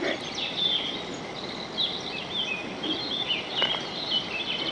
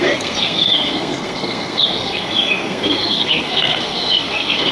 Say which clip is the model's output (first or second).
second